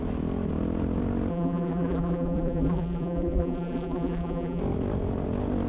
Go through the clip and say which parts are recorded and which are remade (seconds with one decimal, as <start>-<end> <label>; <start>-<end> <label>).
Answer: 0.0-1.3 recorded; 1.3-4.6 remade; 4.6-5.7 recorded